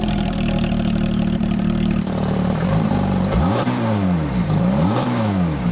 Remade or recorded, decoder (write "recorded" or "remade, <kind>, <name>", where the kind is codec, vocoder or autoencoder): remade, vocoder, BigVGAN v2